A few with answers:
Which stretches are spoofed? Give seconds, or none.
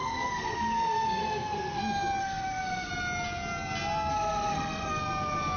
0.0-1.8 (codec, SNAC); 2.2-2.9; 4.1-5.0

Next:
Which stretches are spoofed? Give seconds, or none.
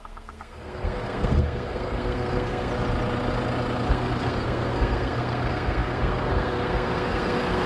0.0-2.7 (codec, SNAC); 3.9-7.7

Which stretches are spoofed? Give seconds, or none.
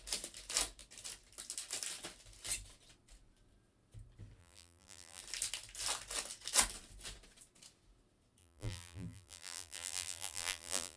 4.4-5.2 (vocoder, BigVGAN v2); 8.4-11.0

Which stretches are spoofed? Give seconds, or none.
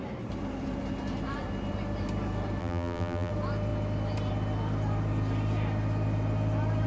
2.6-3.3 (vocoder, BigVGAN v2)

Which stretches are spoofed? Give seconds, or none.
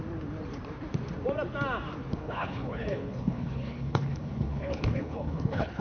2.1-5.8 (codec, HILCodec)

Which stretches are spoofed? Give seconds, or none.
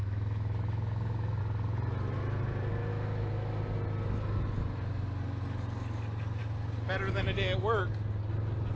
0.0-1.4 (autoencoder, DAC-VAE); 2.9-3.6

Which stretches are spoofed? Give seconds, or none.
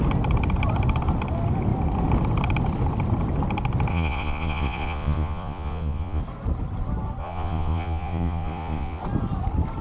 3.9-6.2 (vocoder, Vocos); 7.2-9.0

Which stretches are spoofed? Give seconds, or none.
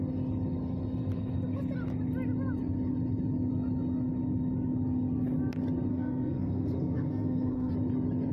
5.9-7.7 (codec, SNAC)